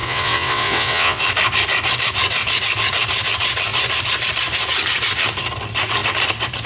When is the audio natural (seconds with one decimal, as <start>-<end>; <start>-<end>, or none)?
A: 1.2-6.7